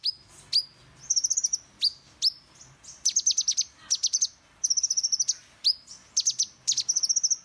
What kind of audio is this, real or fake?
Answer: real